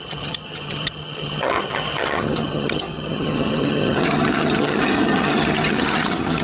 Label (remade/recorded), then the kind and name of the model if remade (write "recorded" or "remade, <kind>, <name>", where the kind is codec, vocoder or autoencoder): remade, vocoder, HiFi-GAN